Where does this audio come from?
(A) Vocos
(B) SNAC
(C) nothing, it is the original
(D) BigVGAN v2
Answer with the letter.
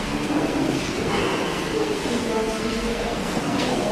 B